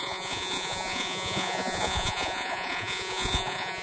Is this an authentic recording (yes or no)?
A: no